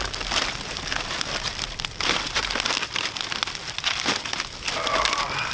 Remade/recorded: recorded